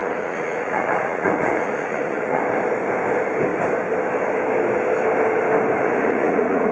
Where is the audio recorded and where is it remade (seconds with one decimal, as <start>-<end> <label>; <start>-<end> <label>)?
0.0-2.4 remade; 2.4-5.8 recorded; 5.8-6.7 remade